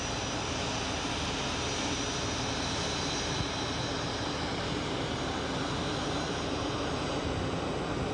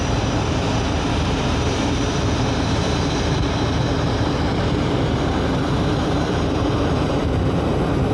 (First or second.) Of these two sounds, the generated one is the second